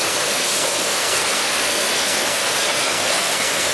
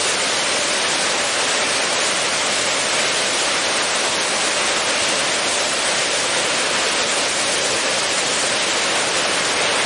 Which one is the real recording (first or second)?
second